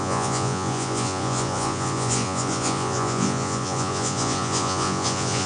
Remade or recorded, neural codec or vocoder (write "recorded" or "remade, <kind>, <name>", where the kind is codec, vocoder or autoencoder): remade, vocoder, Vocos